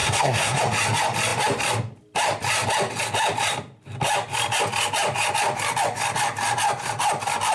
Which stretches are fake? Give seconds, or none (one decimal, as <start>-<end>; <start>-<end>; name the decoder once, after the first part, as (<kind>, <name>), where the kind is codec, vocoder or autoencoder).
0.0-0.6 (codec, SNAC)